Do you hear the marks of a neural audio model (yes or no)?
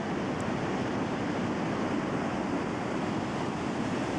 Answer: no